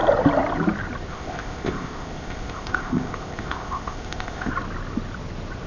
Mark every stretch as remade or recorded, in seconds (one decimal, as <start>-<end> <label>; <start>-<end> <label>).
0.0-1.1 recorded; 1.1-4.5 remade; 4.5-5.7 recorded

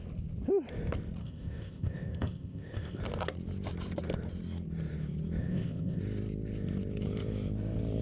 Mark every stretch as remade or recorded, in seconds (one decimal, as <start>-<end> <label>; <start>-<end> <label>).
0.0-1.2 recorded; 1.2-3.0 remade; 3.0-5.4 recorded; 5.4-6.0 remade; 6.0-8.0 recorded

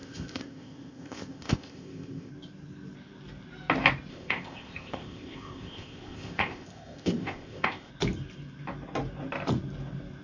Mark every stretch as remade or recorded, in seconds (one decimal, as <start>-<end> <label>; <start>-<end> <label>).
0.0-2.3 remade; 2.3-4.1 recorded; 4.1-7.9 remade; 7.9-10.2 recorded

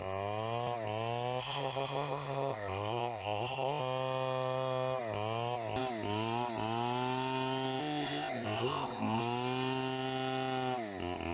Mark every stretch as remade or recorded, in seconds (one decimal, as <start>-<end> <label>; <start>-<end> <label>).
0.0-1.4 recorded; 1.4-3.8 remade; 3.8-7.8 recorded; 7.8-9.2 remade; 9.2-11.3 recorded